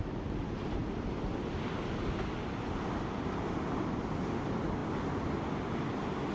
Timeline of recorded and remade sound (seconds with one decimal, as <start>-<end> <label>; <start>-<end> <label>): 0.0-6.3 recorded